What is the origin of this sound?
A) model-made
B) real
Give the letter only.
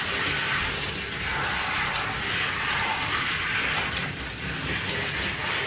B